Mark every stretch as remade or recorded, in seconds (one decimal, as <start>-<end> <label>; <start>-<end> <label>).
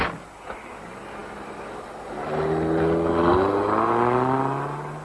0.0-5.0 recorded